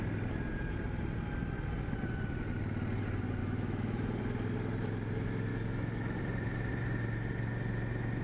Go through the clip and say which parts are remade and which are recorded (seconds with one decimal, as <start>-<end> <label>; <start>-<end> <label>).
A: 0.0-3.4 recorded; 3.4-4.2 remade; 4.2-5.5 recorded; 5.5-6.2 remade; 6.2-8.2 recorded